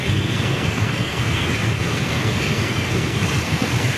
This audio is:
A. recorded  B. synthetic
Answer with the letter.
B